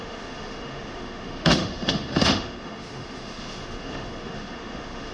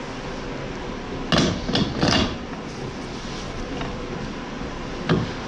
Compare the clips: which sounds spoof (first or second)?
first